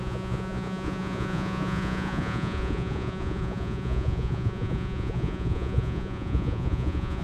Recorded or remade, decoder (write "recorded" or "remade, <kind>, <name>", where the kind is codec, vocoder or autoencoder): remade, vocoder, Vocos